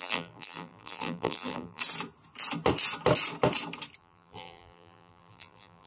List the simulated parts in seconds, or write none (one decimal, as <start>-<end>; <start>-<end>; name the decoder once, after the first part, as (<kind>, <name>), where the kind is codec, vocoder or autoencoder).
0.0-1.8 (vocoder, BigVGAN v2); 4.0-5.9